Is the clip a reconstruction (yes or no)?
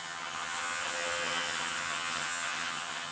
yes